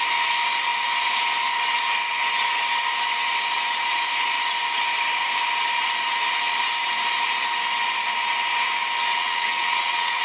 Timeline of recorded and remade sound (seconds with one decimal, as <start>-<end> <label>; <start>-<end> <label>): 0.0-9.1 recorded; 9.1-10.2 remade

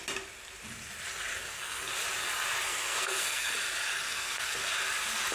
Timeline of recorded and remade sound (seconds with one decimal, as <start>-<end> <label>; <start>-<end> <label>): 0.0-1.3 recorded; 1.3-1.9 remade; 1.9-2.7 recorded; 2.7-3.5 remade; 3.5-4.1 recorded; 4.1-4.7 remade; 4.7-5.3 recorded

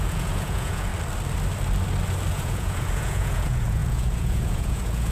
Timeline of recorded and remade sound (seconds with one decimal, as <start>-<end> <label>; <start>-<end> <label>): 0.0-0.9 remade; 0.9-2.3 recorded; 2.3-5.1 remade

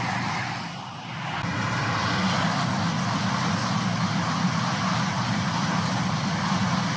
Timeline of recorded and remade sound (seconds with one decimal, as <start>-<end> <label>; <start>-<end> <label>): 0.0-5.6 recorded; 5.6-6.6 remade; 6.6-7.0 recorded

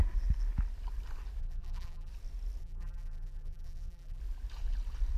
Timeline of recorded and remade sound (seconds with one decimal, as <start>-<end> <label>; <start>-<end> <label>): 0.0-1.4 recorded; 1.4-2.1 remade; 2.1-2.6 recorded; 2.6-4.2 remade; 4.2-5.2 recorded

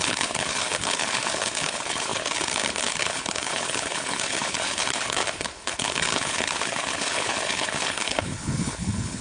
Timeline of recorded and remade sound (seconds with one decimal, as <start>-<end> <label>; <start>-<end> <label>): 0.0-9.2 remade

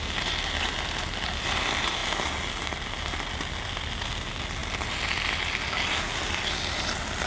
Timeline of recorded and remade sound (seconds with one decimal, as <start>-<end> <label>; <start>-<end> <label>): 0.0-7.3 recorded

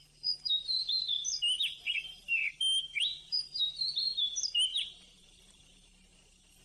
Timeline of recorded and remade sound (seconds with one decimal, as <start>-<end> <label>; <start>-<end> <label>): 0.0-1.2 recorded; 1.2-4.2 remade; 4.2-4.7 recorded; 4.7-5.9 remade; 5.9-6.6 recorded